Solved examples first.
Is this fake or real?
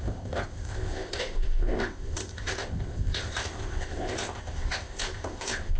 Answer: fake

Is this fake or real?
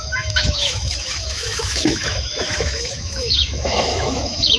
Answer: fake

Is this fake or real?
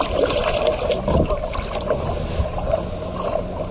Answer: real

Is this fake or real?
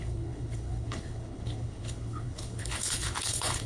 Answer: fake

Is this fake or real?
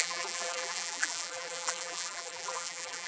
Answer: fake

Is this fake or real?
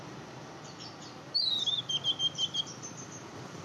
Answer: real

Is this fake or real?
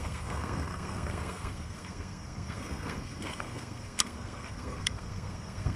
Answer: fake